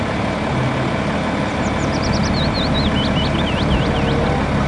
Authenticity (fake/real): real